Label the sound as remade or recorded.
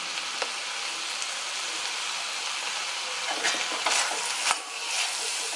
recorded